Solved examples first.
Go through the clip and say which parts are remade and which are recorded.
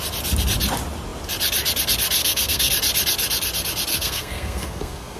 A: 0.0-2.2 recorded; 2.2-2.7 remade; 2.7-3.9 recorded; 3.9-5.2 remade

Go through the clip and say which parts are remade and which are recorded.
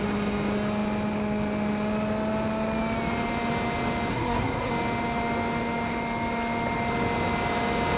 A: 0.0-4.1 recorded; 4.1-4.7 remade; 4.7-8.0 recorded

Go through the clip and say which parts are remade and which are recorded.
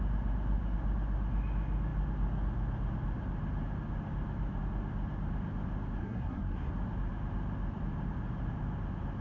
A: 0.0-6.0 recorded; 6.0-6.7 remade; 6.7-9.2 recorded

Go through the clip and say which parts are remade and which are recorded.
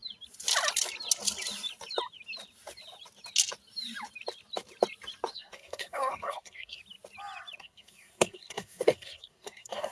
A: 0.0-5.3 recorded; 5.3-6.8 remade; 6.8-7.6 recorded; 7.6-9.9 remade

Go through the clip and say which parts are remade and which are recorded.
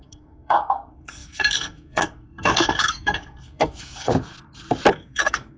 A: 0.0-4.1 remade; 4.1-4.9 recorded; 4.9-5.6 remade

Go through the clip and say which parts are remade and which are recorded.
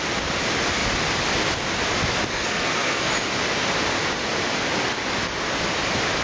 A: 0.0-2.3 recorded; 2.3-3.1 remade; 3.1-6.2 recorded